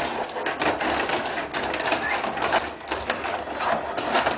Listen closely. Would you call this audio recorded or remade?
recorded